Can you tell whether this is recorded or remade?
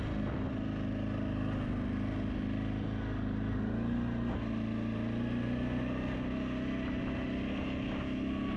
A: recorded